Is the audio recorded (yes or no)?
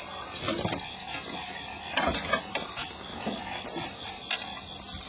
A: yes